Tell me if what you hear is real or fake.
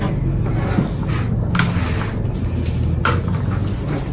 real